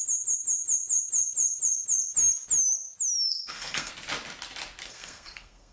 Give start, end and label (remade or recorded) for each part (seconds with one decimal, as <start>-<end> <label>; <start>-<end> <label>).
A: 0.0-3.3 recorded; 3.3-3.9 remade; 3.9-4.9 recorded; 4.9-5.7 remade